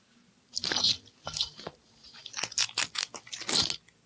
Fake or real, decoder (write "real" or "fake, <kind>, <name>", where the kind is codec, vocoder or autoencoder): real